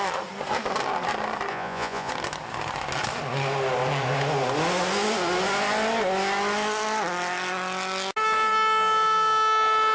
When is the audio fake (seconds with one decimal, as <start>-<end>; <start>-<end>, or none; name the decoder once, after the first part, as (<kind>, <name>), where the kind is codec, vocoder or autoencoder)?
1.5-2.1 (vocoder, Vocos)